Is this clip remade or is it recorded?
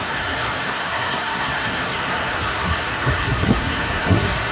remade